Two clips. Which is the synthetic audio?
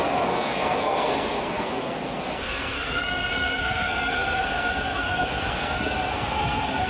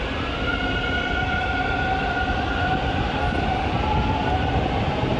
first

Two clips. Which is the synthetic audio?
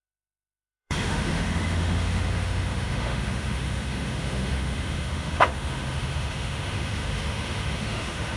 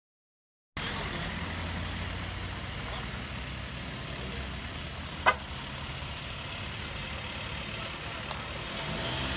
first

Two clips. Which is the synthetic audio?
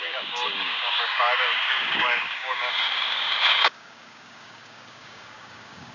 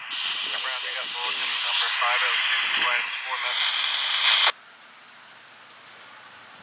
first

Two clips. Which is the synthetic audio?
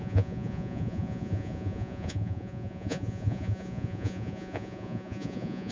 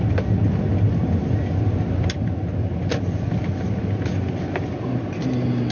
first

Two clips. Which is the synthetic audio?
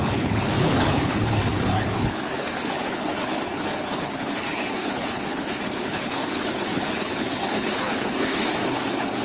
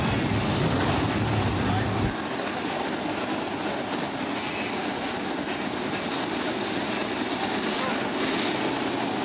first